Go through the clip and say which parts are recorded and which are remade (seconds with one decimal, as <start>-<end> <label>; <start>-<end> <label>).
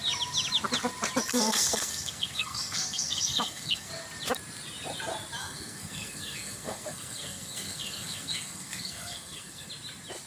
0.0-1.3 recorded; 1.3-3.9 remade; 3.9-5.4 recorded; 5.4-9.7 remade; 9.7-10.3 recorded